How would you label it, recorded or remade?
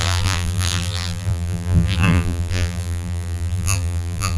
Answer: remade